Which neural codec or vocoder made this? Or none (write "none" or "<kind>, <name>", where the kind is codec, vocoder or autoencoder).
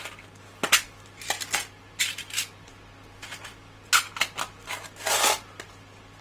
none